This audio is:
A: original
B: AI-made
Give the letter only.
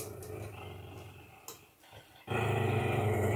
A